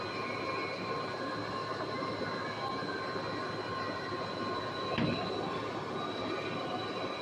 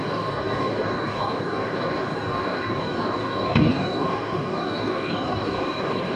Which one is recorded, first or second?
first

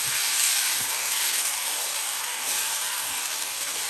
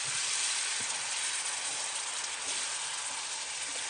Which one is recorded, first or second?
second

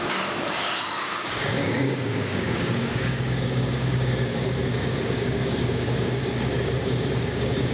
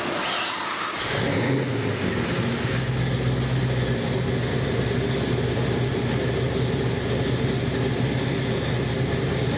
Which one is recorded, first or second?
second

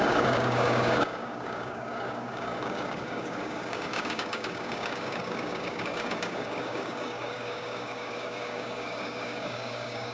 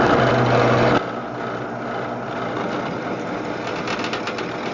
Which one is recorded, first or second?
second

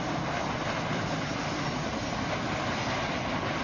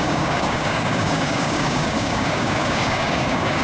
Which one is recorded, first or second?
first